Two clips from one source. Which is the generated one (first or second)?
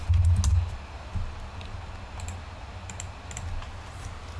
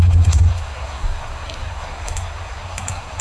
second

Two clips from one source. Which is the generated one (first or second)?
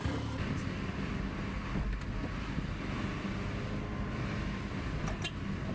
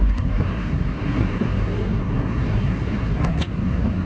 second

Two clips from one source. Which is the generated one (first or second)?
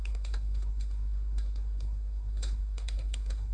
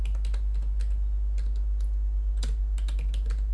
first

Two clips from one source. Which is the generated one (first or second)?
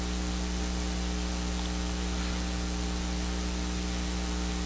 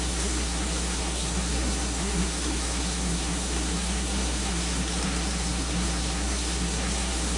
second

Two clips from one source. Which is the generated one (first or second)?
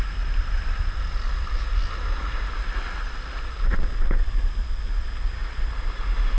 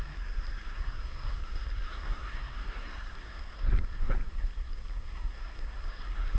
second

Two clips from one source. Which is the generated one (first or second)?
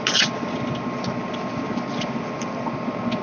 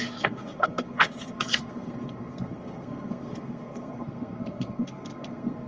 second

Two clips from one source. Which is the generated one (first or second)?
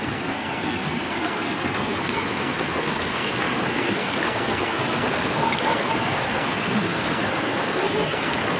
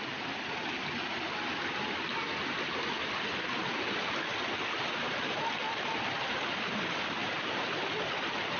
first